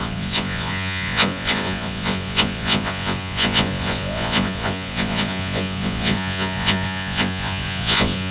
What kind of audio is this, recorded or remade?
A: remade